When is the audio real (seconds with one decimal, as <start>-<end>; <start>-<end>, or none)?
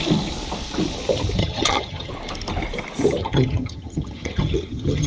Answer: 0.0-1.4; 2.1-3.2